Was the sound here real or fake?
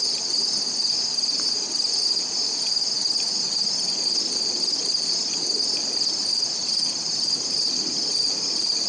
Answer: real